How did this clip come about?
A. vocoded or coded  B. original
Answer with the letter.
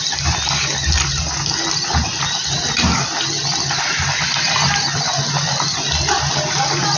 B